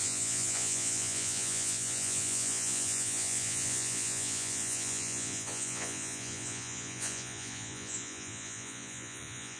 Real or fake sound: fake